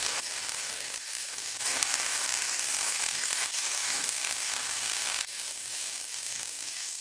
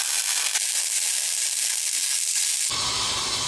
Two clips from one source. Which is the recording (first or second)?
second